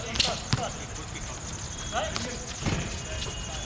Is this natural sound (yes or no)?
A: yes